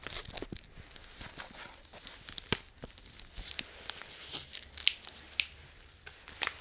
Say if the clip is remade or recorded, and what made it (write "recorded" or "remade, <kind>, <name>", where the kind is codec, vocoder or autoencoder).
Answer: recorded